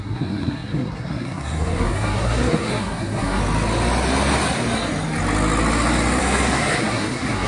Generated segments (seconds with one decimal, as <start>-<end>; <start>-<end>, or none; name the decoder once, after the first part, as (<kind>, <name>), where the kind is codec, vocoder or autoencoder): 0.0-3.4 (codec, SNAC); 6.2-7.5